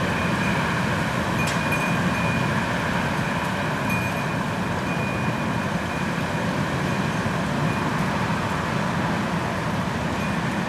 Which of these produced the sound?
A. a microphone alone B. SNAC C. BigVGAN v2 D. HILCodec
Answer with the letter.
A